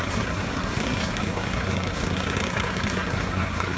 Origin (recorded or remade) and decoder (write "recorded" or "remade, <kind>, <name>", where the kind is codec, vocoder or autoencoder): remade, codec, SNAC